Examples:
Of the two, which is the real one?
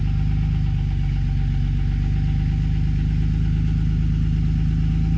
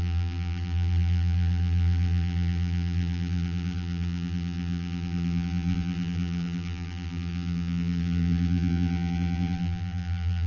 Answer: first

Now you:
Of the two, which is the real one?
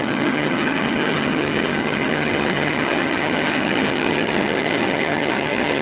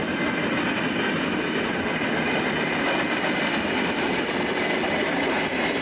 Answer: second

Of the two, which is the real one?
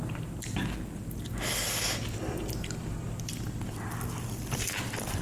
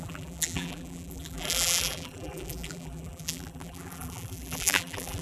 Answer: first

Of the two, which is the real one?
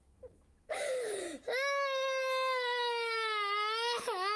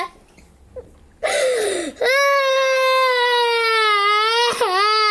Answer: second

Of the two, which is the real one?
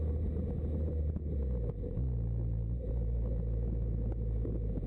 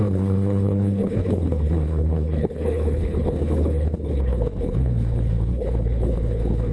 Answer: first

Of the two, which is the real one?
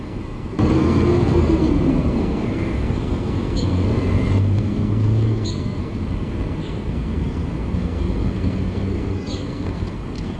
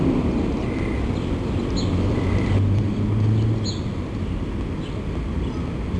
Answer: second